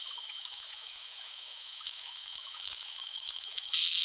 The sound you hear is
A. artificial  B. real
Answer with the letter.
A